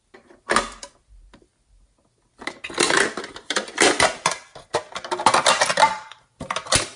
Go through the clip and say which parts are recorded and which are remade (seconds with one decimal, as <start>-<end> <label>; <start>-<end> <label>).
0.0-7.0 recorded